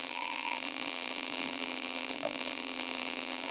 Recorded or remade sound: remade